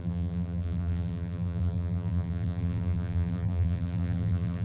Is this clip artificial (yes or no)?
yes